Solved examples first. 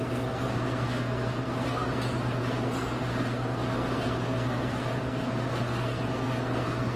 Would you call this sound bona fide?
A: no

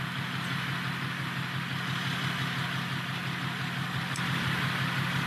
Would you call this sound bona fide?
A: yes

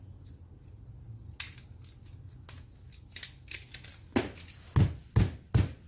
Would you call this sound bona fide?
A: yes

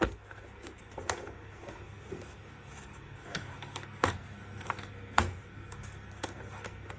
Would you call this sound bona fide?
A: no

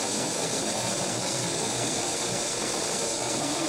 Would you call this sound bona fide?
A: no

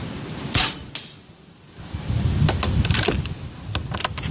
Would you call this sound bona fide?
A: yes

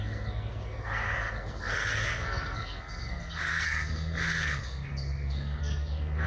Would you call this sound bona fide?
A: no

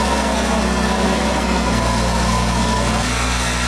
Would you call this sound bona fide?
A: no